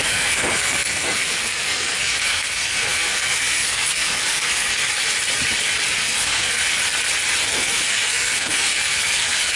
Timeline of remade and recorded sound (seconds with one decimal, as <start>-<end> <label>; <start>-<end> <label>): 0.0-4.9 remade; 4.9-6.0 recorded; 6.0-6.8 remade; 6.8-7.5 recorded; 7.5-9.6 remade